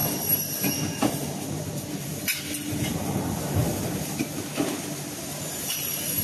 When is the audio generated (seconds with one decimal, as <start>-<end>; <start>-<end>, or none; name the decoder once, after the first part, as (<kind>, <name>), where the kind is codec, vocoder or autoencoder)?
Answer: 1.6-2.1 (vocoder, BigVGAN v2); 2.7-3.6; 5.0-6.2

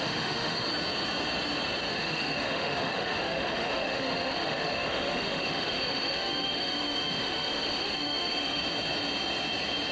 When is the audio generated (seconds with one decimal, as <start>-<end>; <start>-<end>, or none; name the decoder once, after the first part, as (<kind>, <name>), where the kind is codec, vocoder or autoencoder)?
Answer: 0.0-0.7 (autoencoder, DAC-VAE); 1.9-8.6

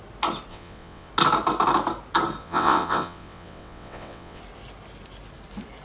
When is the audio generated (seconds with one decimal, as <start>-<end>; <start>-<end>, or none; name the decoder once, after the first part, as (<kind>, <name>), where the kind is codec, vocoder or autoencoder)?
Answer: 0.5-1.1 (vocoder, WaveNeXt); 2.4-4.4

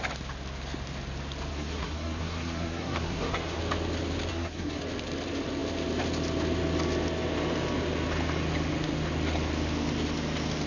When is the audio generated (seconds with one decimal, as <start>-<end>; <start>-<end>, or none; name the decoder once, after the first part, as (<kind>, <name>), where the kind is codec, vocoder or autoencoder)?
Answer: 1.5-3.6 (codec, SNAC); 4.3-4.8